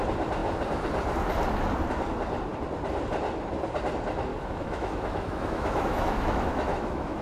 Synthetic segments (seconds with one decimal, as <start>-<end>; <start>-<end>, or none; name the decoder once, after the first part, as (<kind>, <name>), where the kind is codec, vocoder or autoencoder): 4.3-7.2 (autoencoder, DAC-VAE)